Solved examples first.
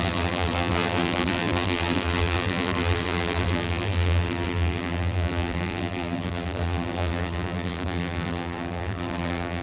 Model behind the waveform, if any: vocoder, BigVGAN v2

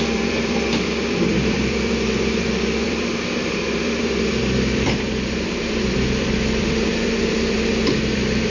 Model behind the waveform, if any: vocoder, BigVGAN v2